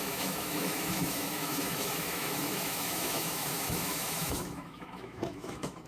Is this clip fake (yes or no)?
yes